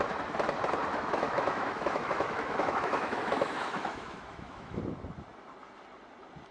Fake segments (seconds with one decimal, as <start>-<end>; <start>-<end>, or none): 0.9-4.8